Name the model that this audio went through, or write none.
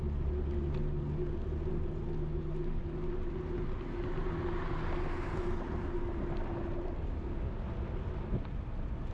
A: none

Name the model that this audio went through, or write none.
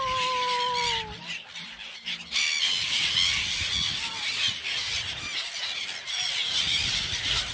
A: none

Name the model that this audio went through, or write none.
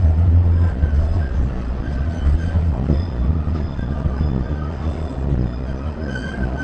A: vocoder, Vocos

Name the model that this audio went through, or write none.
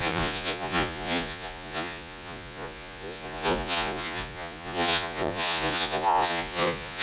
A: vocoder, Vocos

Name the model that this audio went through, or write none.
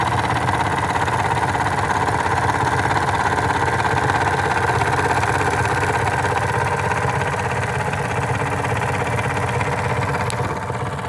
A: none